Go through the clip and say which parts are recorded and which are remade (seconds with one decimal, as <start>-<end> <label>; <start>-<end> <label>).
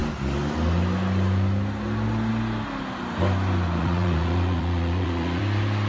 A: 0.0-3.8 recorded; 3.8-5.4 remade; 5.4-5.9 recorded